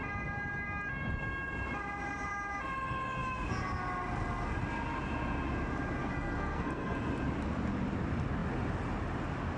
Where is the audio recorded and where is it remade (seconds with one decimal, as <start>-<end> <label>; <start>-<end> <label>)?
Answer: 0.0-6.0 recorded; 6.0-7.1 remade; 7.1-9.6 recorded

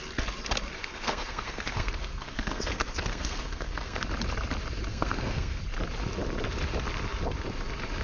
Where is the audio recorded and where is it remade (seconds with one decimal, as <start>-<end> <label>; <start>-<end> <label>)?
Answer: 0.0-0.8 recorded; 0.8-4.0 remade; 4.0-4.9 recorded; 4.9-5.6 remade; 5.6-8.0 recorded

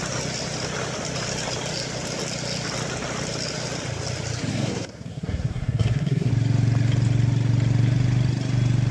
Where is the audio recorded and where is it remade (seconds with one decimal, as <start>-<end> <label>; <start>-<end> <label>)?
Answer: 0.0-4.5 recorded; 4.5-6.3 remade; 6.3-8.9 recorded